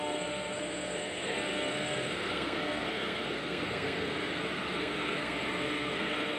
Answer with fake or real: fake